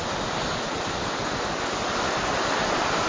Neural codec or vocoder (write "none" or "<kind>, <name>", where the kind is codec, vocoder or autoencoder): none